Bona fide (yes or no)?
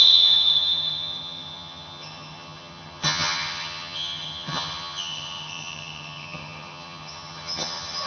no